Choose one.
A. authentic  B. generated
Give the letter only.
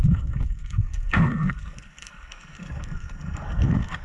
B